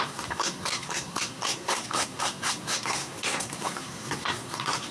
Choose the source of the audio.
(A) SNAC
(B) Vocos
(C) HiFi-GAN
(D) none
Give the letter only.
A